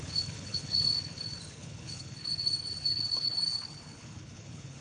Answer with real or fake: fake